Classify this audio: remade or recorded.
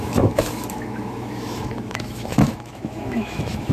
remade